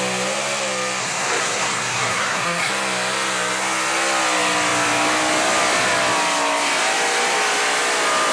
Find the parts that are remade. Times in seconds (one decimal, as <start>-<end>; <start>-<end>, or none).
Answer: 1.0-2.7